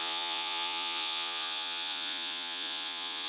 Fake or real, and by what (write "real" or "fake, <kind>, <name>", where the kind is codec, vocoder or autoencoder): fake, vocoder, Vocos